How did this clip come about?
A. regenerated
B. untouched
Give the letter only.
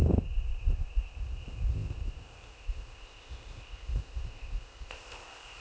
A